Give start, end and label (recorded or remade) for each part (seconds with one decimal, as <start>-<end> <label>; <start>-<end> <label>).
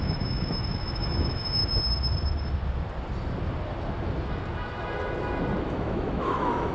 0.0-1.6 remade; 1.6-5.6 recorded; 5.6-6.7 remade